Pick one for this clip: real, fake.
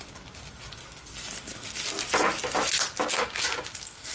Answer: real